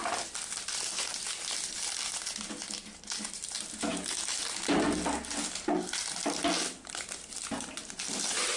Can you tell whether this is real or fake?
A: real